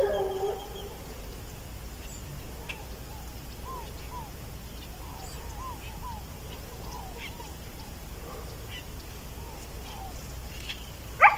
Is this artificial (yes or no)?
no